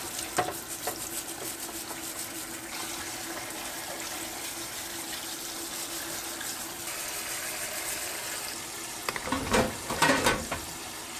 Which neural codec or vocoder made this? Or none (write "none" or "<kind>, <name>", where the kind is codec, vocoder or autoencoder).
none